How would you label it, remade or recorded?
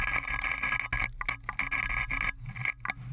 recorded